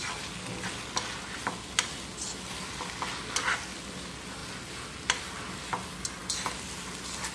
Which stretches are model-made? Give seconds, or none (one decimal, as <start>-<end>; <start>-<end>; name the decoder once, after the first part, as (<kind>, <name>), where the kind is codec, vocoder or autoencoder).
none